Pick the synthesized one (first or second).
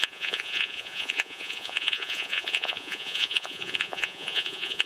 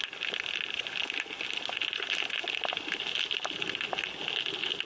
first